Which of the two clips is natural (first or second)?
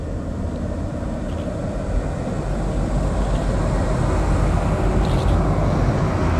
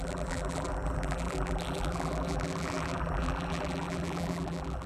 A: first